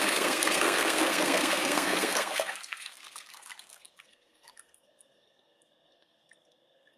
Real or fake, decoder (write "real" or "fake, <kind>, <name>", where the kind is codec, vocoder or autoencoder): fake, codec, SNAC